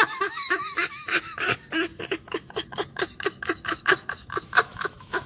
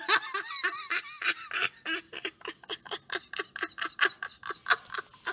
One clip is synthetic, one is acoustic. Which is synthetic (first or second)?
first